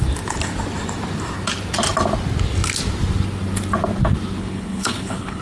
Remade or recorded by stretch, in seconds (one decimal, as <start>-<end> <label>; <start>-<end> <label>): 0.0-4.4 recorded; 4.4-5.4 remade